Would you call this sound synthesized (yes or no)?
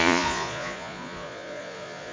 yes